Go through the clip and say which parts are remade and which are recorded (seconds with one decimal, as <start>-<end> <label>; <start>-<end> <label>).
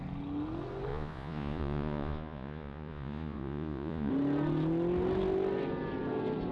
0.0-0.9 recorded; 0.9-4.1 remade; 4.1-6.5 recorded